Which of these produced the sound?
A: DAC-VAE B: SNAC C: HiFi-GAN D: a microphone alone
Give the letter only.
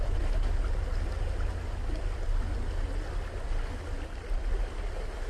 D